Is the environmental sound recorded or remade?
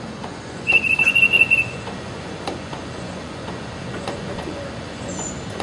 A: remade